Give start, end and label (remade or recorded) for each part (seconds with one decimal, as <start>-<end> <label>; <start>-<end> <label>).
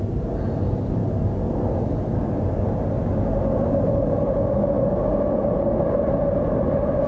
0.0-1.0 remade; 1.0-5.3 recorded; 5.3-7.1 remade